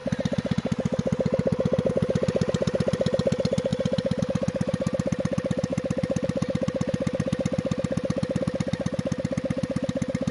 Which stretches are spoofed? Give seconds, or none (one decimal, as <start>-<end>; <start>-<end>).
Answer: none